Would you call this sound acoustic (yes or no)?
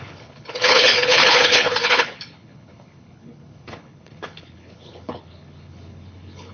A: no